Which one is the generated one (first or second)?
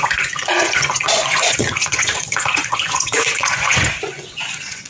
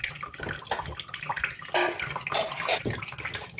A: first